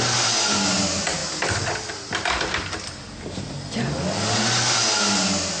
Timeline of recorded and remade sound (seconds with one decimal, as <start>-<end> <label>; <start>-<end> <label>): 0.0-5.6 recorded